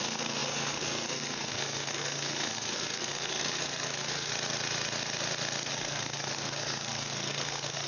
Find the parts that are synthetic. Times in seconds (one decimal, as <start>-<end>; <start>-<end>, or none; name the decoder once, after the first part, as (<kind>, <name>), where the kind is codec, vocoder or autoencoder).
0.0-4.3 (codec, SNAC); 5.7-7.9